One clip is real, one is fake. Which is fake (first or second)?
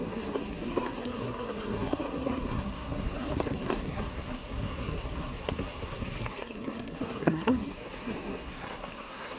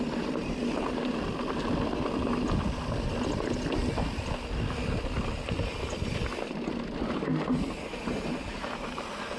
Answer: first